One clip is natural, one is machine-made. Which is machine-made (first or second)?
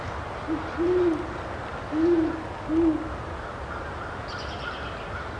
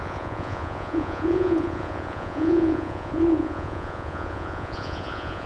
second